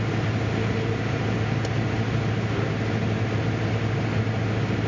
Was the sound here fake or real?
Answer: real